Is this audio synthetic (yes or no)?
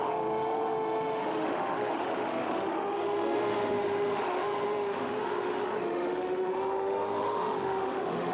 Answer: yes